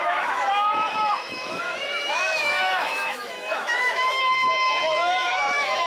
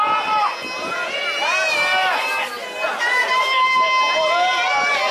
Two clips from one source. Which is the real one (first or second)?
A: second